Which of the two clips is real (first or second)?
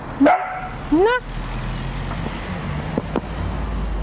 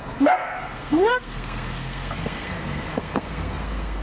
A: first